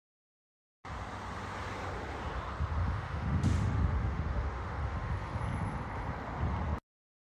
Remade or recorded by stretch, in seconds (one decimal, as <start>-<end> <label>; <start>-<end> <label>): 0.0-2.8 recorded; 2.8-5.4 remade; 5.4-7.4 recorded